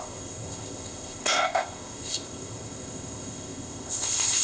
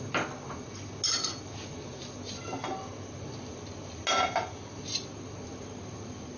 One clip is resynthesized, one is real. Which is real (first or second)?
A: second